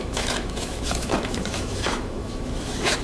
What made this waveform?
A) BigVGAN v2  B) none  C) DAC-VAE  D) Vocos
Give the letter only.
C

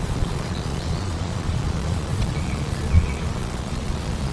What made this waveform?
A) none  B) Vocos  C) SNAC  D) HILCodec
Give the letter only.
B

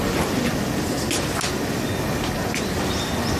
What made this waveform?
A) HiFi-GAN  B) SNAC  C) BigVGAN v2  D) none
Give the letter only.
D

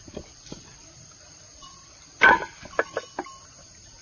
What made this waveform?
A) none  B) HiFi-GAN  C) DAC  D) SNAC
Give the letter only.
A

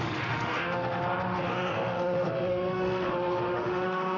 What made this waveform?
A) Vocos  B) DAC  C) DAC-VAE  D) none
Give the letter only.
C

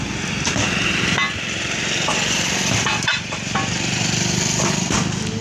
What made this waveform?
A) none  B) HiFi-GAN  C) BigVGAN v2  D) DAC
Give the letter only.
A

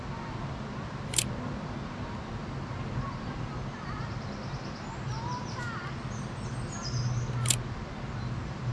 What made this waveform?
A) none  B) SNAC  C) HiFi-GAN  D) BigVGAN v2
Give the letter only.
A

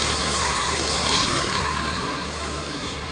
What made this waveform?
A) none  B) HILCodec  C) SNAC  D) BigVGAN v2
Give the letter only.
C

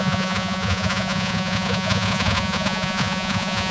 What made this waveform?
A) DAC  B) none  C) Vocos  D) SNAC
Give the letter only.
C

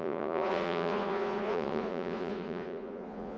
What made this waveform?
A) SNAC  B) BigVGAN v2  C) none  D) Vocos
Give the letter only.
D